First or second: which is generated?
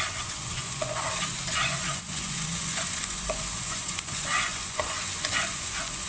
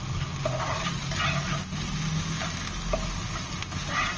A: first